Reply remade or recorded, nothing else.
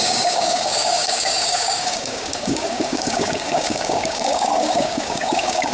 remade